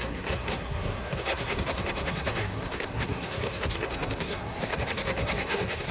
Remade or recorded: remade